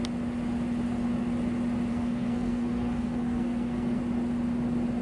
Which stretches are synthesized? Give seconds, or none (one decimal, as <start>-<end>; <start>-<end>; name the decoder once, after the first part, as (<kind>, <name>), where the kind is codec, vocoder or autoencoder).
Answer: 1.9-4.0 (codec, SNAC)